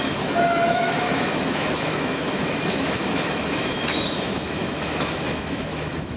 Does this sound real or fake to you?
fake